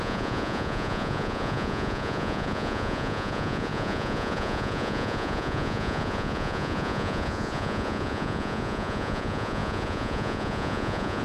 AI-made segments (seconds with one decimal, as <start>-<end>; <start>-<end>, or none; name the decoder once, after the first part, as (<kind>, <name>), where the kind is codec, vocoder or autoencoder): 0.0-11.2 (vocoder, Vocos)